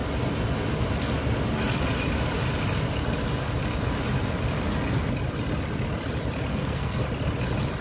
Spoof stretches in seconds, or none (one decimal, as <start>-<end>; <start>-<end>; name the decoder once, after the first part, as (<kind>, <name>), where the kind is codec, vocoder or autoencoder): 6.5-7.0 (codec, SNAC)